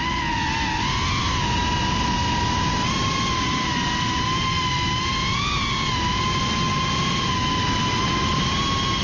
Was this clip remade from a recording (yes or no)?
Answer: no